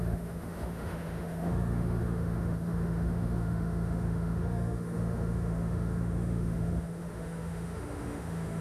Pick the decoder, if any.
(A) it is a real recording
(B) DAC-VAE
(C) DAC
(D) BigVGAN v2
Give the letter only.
B